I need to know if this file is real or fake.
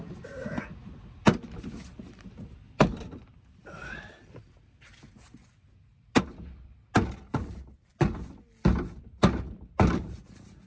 real